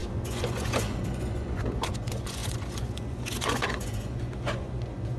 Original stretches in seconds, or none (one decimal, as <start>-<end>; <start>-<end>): none